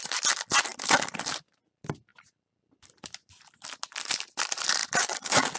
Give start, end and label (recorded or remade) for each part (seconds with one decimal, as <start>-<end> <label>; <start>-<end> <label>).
0.0-5.6 recorded